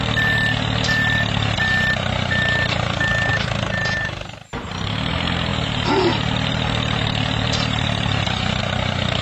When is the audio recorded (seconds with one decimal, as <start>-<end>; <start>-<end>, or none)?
0.0-3.3; 4.7-5.5; 8.6-9.2